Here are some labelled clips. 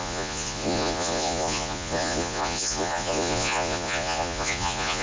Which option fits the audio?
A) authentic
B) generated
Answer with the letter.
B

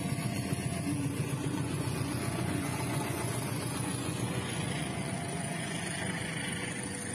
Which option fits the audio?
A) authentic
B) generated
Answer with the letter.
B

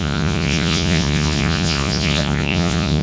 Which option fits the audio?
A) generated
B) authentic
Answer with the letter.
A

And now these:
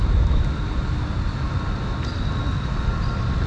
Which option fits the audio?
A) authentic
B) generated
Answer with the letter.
A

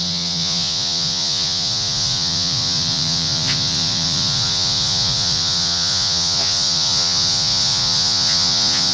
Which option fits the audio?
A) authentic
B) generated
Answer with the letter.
B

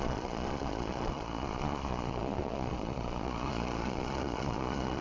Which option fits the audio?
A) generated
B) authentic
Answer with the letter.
A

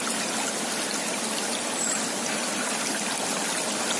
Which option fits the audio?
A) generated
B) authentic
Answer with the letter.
B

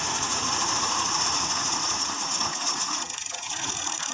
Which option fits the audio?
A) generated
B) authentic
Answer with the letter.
A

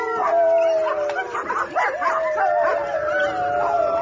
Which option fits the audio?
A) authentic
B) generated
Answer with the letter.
A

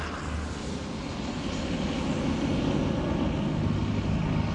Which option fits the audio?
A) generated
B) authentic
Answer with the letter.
B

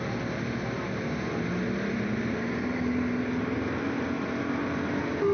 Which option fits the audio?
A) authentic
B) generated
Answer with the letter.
A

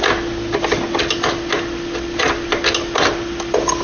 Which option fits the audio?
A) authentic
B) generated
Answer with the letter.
A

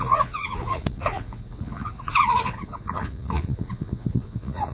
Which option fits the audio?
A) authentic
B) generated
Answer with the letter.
B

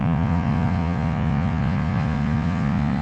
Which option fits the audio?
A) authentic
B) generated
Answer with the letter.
B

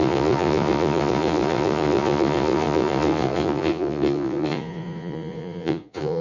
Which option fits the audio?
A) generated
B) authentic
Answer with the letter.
A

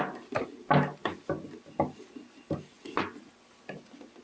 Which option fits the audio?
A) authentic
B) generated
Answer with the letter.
A